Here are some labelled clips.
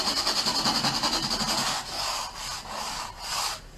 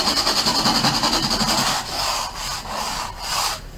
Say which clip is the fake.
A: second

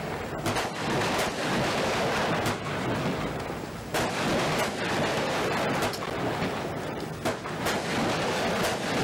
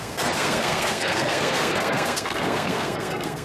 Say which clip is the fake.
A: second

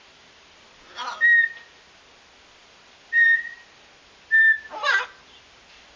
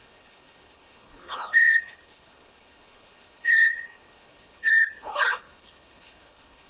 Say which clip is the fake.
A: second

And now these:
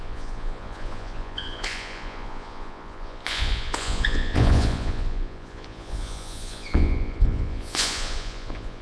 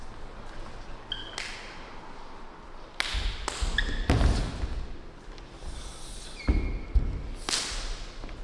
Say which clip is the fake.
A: first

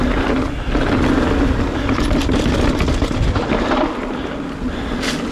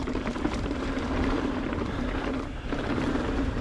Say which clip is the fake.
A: second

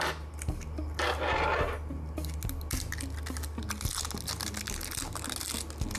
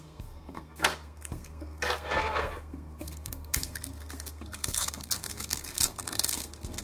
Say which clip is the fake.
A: second